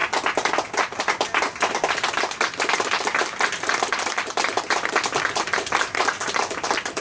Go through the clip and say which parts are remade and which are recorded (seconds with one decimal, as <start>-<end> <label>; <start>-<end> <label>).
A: 0.0-7.0 recorded